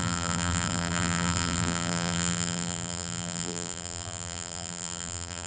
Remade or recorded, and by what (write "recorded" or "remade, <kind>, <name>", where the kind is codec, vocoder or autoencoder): remade, vocoder, BigVGAN v2